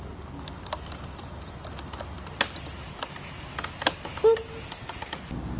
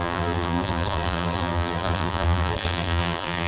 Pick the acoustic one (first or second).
first